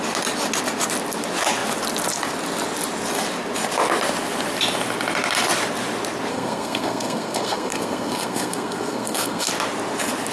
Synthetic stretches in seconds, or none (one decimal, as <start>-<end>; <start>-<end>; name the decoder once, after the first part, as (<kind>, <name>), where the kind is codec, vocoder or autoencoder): 6.3-9.5 (codec, SNAC)